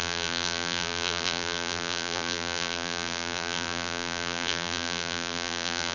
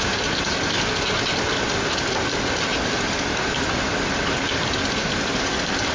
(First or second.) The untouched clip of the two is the second